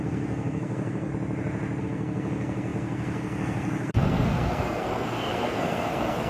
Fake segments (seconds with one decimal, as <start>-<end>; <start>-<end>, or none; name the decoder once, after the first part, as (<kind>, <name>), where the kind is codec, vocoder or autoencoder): 0.0-1.1 (codec, SNAC); 1.8-6.3